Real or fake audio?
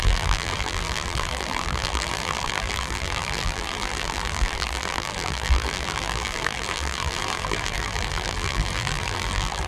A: fake